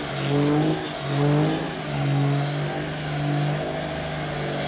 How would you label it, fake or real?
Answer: real